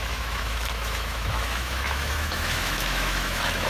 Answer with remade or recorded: remade